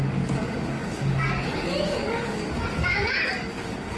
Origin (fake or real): fake